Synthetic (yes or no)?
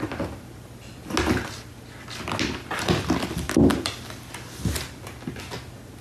no